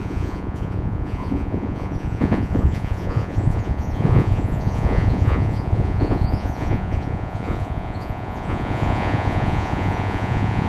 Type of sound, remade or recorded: remade